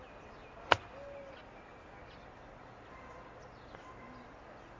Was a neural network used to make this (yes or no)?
no